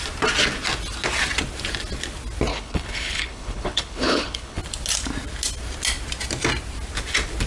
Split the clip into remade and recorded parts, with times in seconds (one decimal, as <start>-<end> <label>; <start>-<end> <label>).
0.0-2.5 recorded; 2.5-4.6 remade; 4.6-7.5 recorded